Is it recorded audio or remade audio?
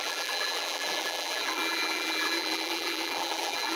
remade